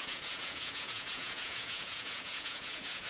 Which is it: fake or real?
fake